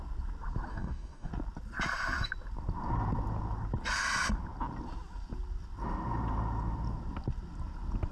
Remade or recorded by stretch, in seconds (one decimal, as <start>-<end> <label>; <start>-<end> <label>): 0.0-0.7 recorded; 0.7-1.3 remade; 1.3-8.1 recorded